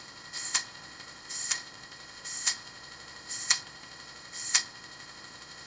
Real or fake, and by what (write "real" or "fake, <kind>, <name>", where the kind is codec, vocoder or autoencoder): fake, codec, ZipCodec